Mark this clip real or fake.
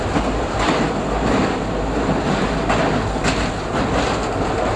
real